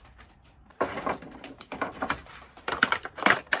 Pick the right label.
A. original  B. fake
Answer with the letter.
B